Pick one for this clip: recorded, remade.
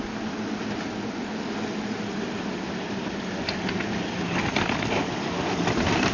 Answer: recorded